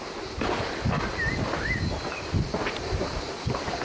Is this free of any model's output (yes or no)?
yes